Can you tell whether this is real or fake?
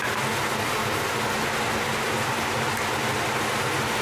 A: real